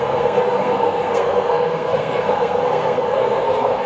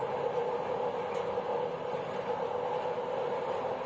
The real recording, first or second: second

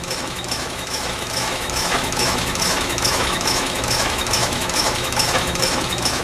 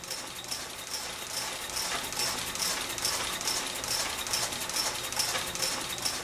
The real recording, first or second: second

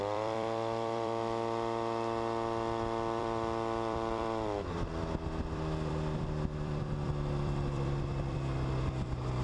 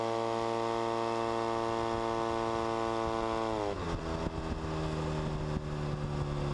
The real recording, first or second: second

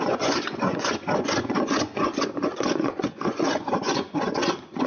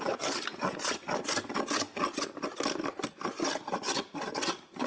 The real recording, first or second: second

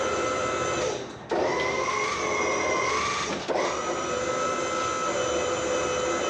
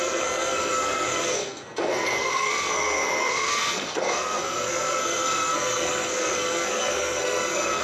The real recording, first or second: first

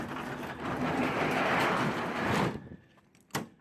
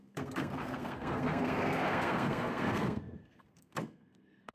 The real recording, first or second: first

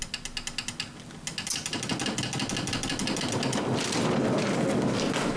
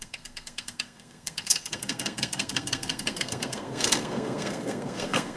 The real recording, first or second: first